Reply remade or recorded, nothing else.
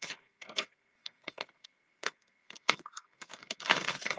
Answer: remade